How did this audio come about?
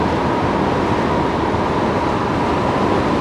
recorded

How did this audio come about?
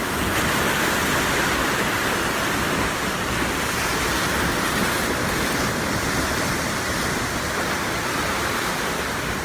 recorded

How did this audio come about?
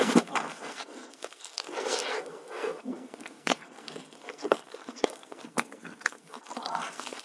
remade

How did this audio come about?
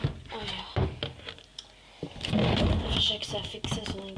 recorded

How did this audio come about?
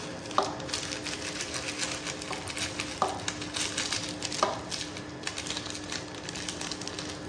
recorded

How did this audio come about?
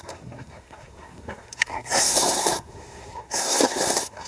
remade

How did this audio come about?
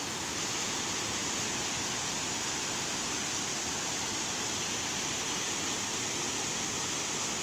recorded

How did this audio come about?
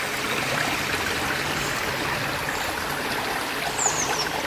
recorded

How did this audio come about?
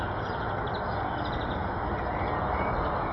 recorded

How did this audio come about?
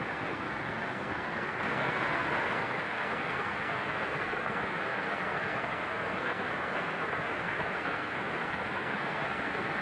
remade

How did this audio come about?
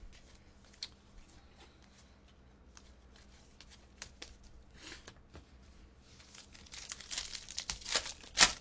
recorded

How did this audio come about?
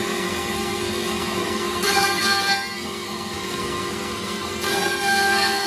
remade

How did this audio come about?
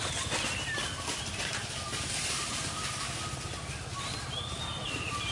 recorded